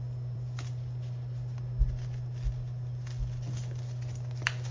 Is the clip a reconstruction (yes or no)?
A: no